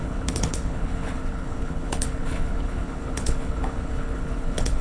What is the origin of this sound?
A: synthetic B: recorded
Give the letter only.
A